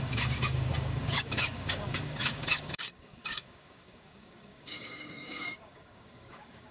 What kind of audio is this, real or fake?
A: fake